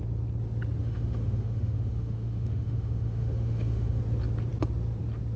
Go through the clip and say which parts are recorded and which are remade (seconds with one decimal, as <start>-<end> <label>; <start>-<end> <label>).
0.0-0.8 recorded; 0.8-4.0 remade; 4.0-5.4 recorded